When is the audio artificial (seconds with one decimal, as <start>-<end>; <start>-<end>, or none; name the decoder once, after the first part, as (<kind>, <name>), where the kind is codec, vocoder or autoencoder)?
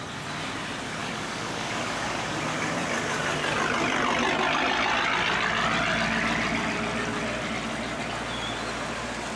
1.0-2.4 (codec, DAC)